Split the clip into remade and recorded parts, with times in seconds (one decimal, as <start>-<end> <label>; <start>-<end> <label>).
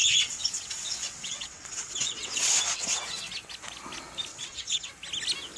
0.0-3.0 remade; 3.0-4.3 recorded; 4.3-4.9 remade; 4.9-5.6 recorded